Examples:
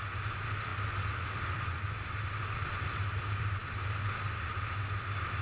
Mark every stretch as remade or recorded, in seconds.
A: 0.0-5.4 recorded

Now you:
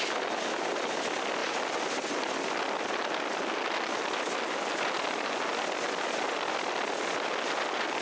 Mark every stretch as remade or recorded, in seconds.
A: 0.0-8.0 recorded

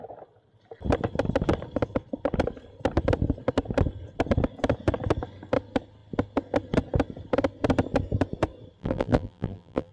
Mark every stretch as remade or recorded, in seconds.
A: 0.0-8.8 recorded; 8.8-9.9 remade

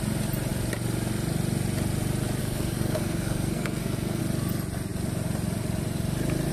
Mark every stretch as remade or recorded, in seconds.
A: 0.0-2.4 recorded; 2.4-4.2 remade; 4.2-6.5 recorded

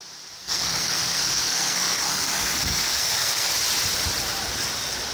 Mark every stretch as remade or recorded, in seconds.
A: 0.0-0.4 recorded; 0.4-3.5 remade; 3.5-5.1 recorded

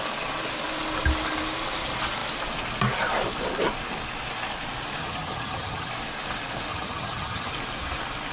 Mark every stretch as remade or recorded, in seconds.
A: 0.0-5.0 recorded; 5.0-5.9 remade; 5.9-6.7 recorded; 6.7-7.5 remade; 7.5-8.3 recorded

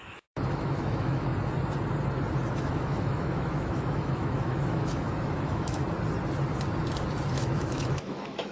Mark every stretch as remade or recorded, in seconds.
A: 0.0-1.3 remade; 1.3-2.5 recorded; 2.5-5.8 remade; 5.8-7.3 recorded; 7.3-8.5 remade

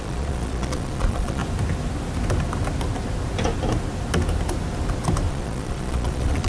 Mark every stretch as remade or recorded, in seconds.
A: 0.0-1.4 remade; 1.4-5.3 recorded; 5.3-6.5 remade